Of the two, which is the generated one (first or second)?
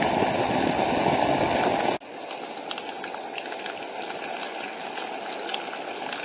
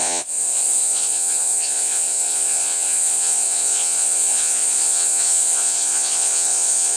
second